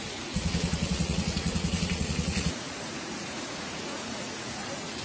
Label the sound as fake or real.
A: fake